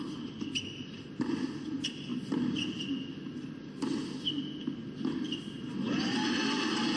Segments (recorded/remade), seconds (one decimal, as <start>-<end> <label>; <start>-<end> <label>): 0.0-7.0 recorded